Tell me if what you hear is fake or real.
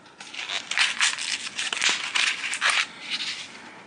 real